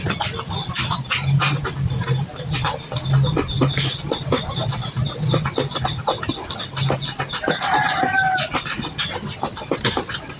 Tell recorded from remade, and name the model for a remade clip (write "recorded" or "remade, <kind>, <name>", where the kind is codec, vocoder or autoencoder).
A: recorded